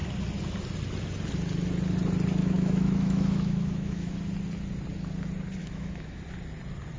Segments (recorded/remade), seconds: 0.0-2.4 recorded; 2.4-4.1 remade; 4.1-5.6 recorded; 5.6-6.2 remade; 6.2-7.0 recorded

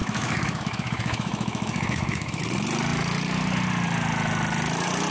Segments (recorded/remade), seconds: 0.0-2.4 remade; 2.4-5.1 recorded

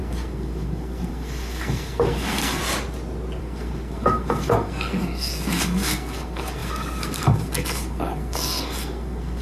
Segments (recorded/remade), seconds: 0.0-2.6 remade; 2.6-3.4 recorded; 3.4-9.4 remade

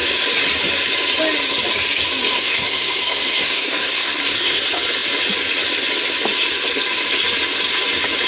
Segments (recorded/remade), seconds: 0.0-2.3 recorded; 2.3-4.6 remade; 4.6-8.3 recorded

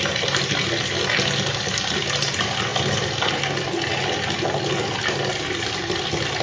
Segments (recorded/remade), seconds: 0.0-6.4 recorded

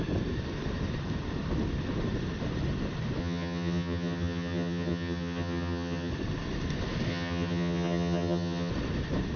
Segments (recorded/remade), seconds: 0.0-3.2 recorded; 3.2-6.1 remade; 6.1-7.1 recorded; 7.1-8.7 remade; 8.7-9.4 recorded

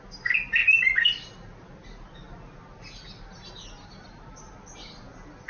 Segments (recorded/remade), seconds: 0.0-5.5 recorded